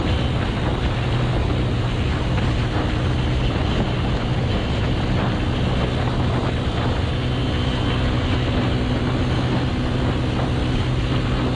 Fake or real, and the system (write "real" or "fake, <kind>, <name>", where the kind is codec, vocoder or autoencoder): real